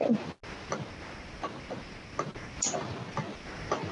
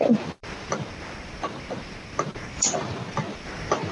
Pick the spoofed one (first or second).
second